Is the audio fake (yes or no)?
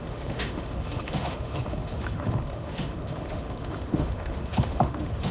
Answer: yes